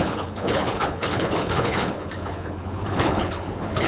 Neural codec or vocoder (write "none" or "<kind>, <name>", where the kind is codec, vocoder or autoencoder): codec, HILCodec